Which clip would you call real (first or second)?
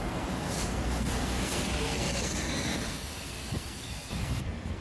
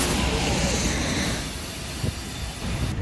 second